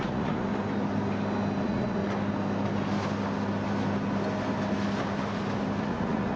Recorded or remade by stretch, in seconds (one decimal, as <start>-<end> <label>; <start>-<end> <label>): 0.0-0.5 remade; 0.5-1.6 recorded; 1.6-2.0 remade; 2.0-5.8 recorded; 5.8-6.4 remade